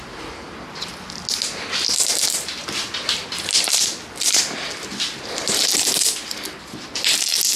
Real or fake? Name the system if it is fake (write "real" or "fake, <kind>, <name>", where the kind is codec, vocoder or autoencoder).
real